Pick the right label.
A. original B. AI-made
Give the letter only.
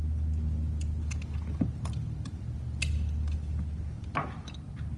A